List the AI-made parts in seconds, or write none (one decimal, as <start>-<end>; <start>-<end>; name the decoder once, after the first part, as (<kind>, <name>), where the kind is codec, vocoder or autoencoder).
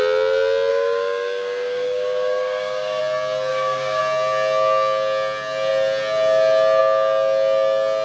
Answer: 0.7-3.0 (codec, DAC); 3.5-4.0